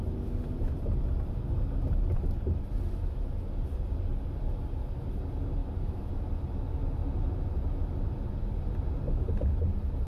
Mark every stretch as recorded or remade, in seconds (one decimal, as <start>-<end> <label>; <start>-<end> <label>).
0.0-5.6 recorded; 5.6-6.1 remade; 6.1-10.1 recorded